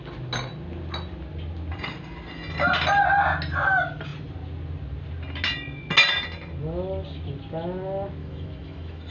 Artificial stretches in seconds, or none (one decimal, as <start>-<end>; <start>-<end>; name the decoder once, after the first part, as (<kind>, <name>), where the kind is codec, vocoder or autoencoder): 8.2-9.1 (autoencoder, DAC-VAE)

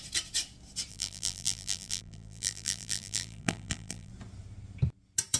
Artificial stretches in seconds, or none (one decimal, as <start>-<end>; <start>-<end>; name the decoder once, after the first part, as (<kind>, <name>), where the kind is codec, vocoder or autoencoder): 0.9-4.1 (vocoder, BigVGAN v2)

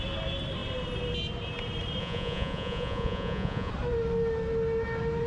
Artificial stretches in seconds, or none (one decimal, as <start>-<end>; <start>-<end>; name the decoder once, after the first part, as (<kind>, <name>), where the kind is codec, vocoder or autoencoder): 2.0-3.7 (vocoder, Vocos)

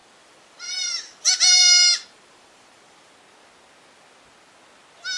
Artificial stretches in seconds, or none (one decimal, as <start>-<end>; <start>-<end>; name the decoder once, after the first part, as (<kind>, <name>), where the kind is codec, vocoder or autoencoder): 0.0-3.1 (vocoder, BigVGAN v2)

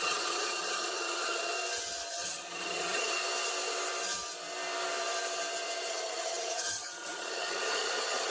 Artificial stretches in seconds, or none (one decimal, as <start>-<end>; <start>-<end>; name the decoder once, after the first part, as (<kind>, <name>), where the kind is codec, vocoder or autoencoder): 0.0-1.5 (vocoder, HiFi-GAN); 2.1-3.2; 5.9-8.3